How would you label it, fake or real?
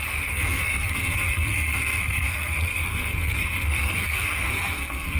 fake